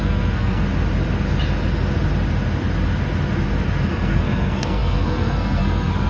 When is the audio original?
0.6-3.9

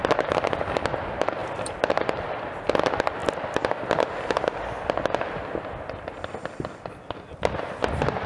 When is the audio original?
0.0-1.4; 1.9-8.3

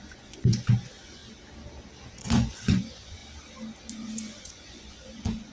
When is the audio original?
1.2-2.1; 3.2-3.9

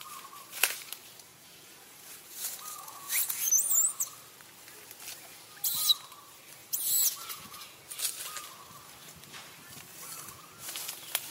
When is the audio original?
0.0-1.3; 3.5-6.6; 7.8-11.3

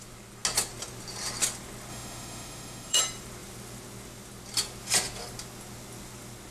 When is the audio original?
0.0-1.9; 3.0-6.5

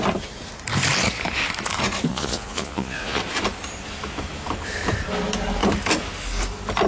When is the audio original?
0.0-2.1; 3.2-6.9

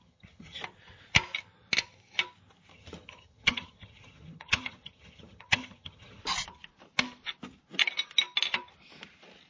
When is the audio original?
0.6-2.7; 6.2-9.5